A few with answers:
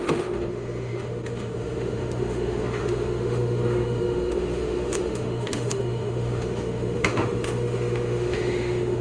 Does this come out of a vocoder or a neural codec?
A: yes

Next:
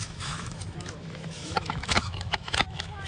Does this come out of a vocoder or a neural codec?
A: yes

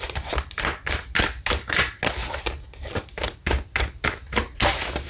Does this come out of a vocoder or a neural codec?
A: no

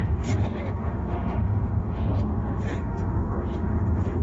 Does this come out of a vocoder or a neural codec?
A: yes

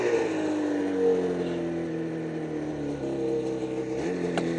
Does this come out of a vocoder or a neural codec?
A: no